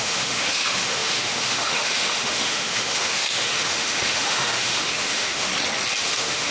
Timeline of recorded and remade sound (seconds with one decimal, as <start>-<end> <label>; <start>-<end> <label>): 0.0-5.5 remade; 5.5-6.0 recorded; 6.0-6.5 remade